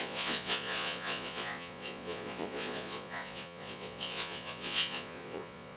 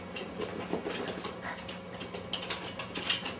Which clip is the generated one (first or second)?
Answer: first